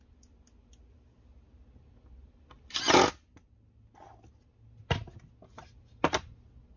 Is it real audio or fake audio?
real